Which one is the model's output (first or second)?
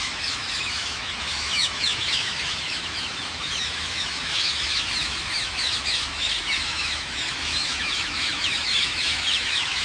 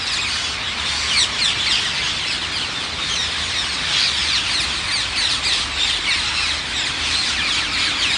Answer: first